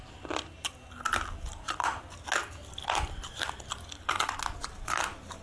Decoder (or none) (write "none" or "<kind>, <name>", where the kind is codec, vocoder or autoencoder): none